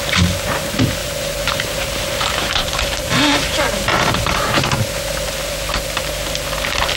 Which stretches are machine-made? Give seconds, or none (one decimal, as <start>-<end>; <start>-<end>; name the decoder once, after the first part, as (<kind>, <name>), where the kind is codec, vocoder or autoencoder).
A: 1.0-5.0 (vocoder, BigVGAN v2)

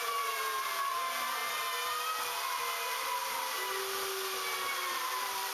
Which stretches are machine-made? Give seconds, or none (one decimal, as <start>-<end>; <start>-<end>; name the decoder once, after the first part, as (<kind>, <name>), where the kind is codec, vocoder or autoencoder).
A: 0.0-1.4 (vocoder, BigVGAN v2); 2.6-3.2; 4.9-5.5

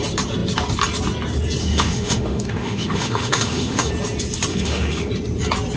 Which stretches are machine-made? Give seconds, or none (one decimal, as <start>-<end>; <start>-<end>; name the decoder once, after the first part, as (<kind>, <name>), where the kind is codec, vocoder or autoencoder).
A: 1.6-3.9 (autoencoder, DAC-VAE); 4.5-5.1